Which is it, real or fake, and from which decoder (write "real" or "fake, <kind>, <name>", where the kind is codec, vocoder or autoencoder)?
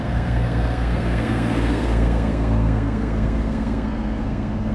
fake, codec, SNAC